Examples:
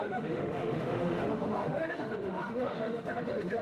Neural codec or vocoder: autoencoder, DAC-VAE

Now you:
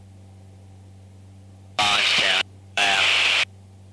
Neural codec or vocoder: vocoder, BigVGAN v2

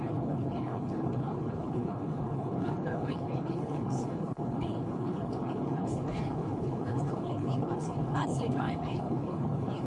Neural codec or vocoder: codec, HILCodec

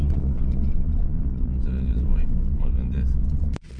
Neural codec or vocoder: vocoder, Vocos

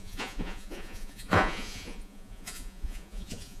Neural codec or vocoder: vocoder, Vocos